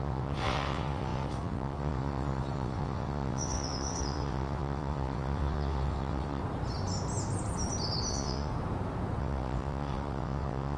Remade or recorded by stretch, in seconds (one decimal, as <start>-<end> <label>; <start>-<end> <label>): 0.0-6.4 remade; 6.4-8.1 recorded; 8.1-8.5 remade; 8.5-9.2 recorded; 9.2-10.8 remade